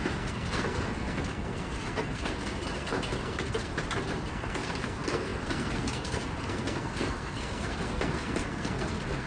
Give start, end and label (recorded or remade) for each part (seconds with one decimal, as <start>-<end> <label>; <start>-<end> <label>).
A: 0.0-3.7 remade; 3.7-4.3 recorded; 4.3-9.3 remade